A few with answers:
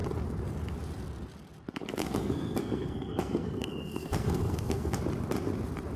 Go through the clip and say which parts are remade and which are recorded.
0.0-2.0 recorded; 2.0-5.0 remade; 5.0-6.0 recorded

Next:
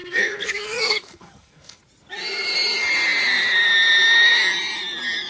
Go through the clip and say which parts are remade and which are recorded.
0.0-1.8 remade; 1.8-5.3 recorded